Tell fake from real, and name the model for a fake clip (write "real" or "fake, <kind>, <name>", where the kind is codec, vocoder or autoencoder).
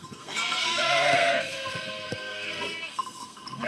fake, codec, SNAC